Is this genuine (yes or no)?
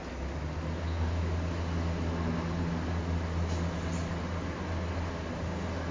yes